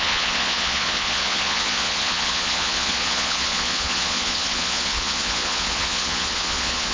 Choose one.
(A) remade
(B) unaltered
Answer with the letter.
A